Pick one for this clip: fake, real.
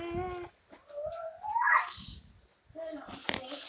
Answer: real